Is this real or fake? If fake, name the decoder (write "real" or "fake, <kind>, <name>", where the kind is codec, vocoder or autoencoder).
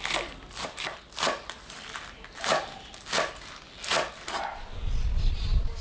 real